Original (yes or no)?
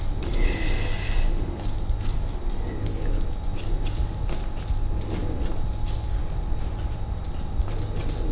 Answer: yes